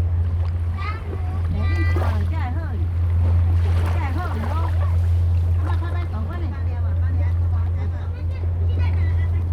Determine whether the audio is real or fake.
real